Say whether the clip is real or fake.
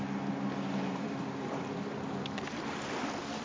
real